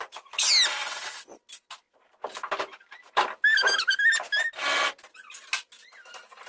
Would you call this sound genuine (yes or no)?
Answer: yes